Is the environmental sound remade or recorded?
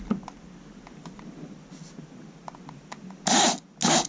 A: recorded